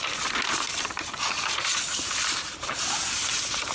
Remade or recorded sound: recorded